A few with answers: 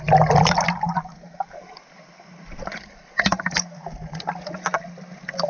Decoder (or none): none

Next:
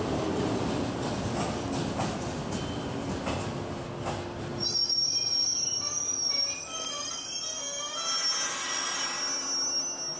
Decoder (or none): none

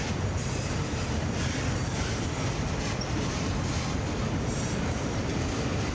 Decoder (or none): none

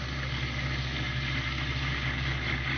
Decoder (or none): none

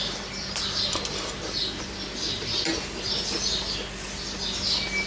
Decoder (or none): none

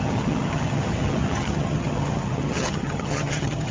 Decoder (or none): vocoder, HiFi-GAN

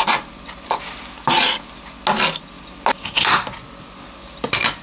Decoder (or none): none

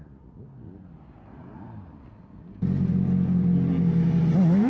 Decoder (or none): none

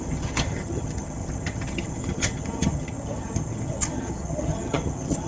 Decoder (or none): vocoder, HiFi-GAN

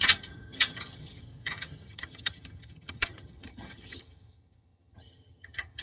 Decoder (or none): vocoder, HiFi-GAN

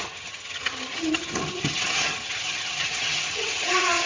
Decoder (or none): vocoder, HiFi-GAN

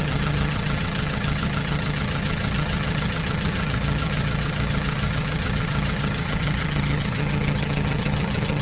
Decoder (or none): vocoder, HiFi-GAN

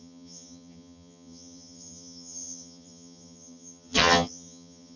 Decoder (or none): vocoder, HiFi-GAN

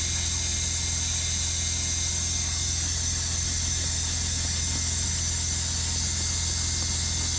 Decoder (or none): none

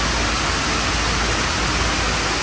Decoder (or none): none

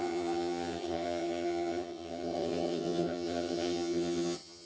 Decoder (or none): vocoder, HiFi-GAN